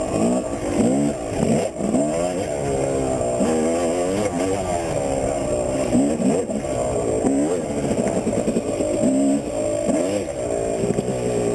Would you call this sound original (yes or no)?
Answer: yes